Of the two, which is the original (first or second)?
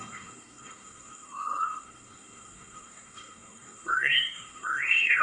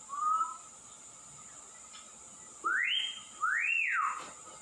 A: second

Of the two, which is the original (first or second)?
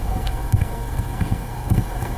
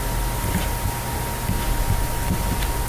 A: second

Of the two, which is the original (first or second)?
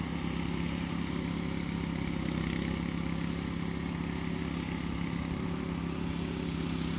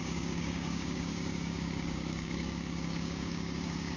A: first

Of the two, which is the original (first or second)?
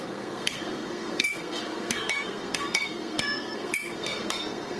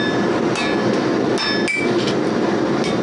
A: second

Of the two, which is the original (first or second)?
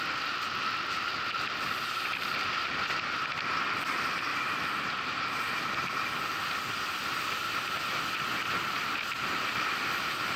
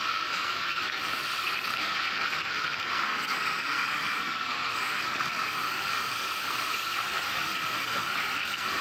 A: first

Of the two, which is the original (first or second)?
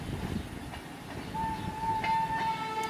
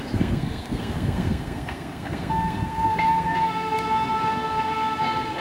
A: first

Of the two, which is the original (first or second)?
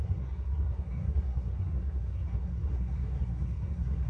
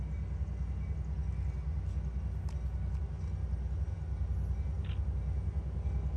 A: second